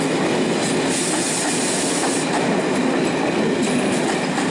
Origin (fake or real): real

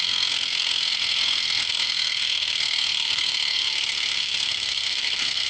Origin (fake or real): fake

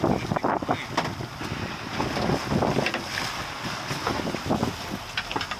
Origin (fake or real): real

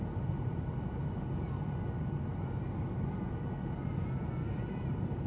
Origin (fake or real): real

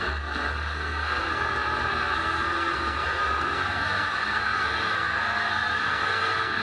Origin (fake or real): fake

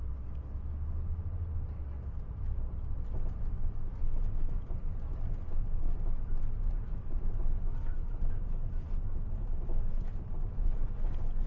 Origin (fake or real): real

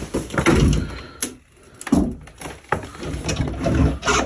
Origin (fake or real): real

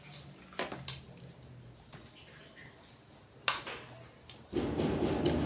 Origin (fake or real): real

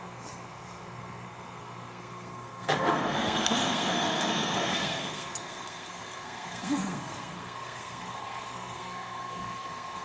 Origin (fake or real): fake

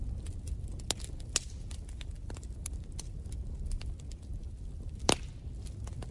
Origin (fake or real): real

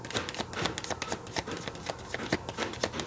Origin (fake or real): real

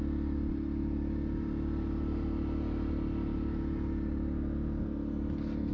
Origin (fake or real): real